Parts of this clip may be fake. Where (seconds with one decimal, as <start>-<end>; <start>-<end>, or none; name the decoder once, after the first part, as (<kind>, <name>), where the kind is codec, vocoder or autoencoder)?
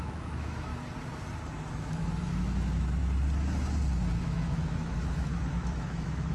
0.0-0.7 (autoencoder, DAC-VAE); 1.7-3.0; 4.2-6.3